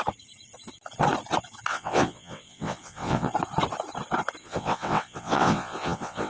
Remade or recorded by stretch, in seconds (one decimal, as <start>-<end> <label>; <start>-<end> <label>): 0.0-1.7 recorded; 1.7-3.3 remade; 3.3-4.4 recorded; 4.4-6.3 remade